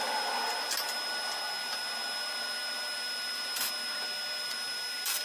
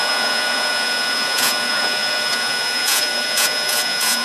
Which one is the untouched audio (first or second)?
first